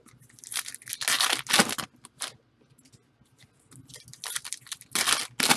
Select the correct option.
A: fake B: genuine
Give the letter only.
B